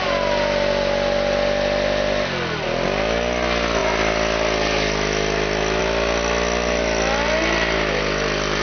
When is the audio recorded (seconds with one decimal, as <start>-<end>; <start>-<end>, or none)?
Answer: 0.0-8.6